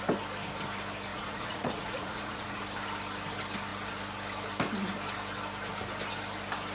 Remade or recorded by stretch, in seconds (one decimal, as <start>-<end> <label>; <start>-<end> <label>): 0.0-1.1 recorded; 1.1-2.6 remade; 2.6-6.7 recorded